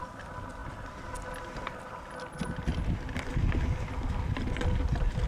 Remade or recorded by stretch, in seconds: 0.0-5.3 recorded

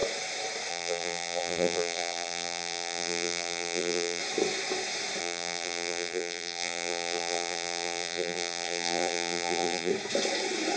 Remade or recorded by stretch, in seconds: 0.0-0.7 recorded; 0.7-4.2 remade; 4.2-5.2 recorded; 5.2-9.9 remade; 9.9-10.8 recorded